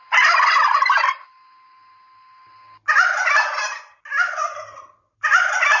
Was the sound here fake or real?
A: real